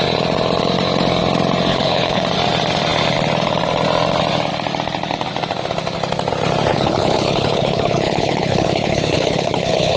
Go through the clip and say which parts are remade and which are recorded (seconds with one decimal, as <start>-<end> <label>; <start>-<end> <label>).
0.0-1.7 recorded; 1.7-2.2 remade; 2.2-6.7 recorded; 6.7-10.0 remade